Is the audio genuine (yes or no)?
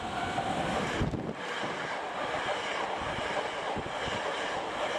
yes